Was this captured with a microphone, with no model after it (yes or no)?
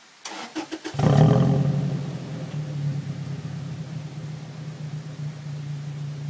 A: yes